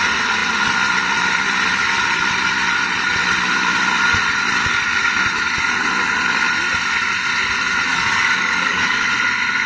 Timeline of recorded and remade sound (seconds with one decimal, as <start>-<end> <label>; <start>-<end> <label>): 0.0-7.9 recorded; 7.9-9.1 remade; 9.1-9.7 recorded